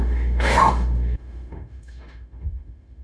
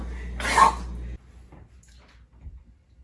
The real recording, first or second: second